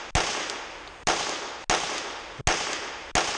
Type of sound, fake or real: real